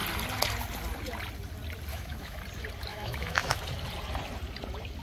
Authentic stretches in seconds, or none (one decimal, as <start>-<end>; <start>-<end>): 0.0-1.9; 2.4-2.9; 3.6-5.0